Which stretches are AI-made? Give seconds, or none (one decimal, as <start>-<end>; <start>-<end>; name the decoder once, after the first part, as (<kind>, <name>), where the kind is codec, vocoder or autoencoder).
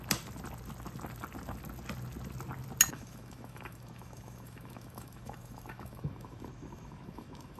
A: 2.9-7.6 (autoencoder, DAC-VAE)